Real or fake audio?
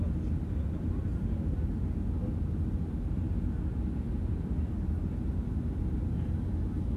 real